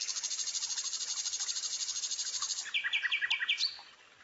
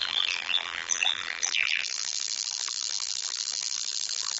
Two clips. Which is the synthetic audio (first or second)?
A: second